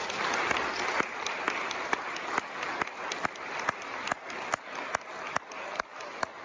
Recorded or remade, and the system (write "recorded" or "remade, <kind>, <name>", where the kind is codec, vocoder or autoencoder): recorded